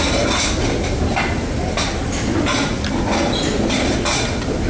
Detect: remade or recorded recorded